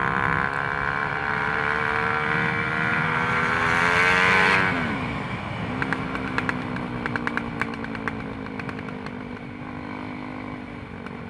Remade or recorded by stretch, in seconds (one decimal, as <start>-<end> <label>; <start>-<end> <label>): 0.0-1.0 recorded; 1.0-1.6 remade; 1.6-2.9 recorded; 2.9-3.8 remade; 3.8-11.3 recorded